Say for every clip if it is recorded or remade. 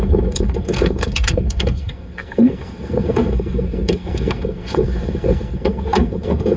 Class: remade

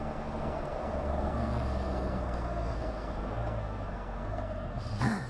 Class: remade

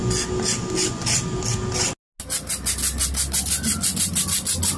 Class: recorded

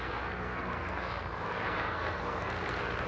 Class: remade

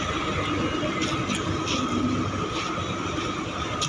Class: recorded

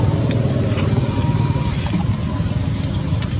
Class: recorded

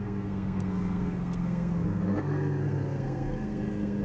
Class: remade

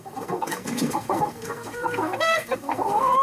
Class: remade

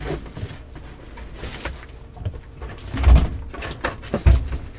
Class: recorded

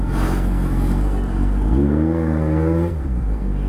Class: remade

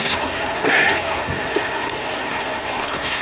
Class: remade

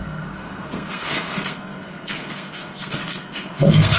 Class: remade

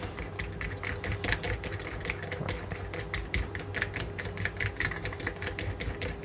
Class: recorded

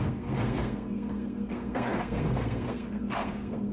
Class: remade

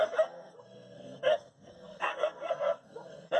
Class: remade